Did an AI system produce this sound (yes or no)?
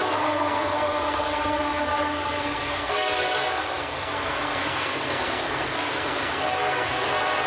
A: yes